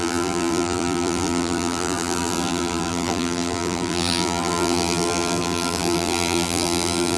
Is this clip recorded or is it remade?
remade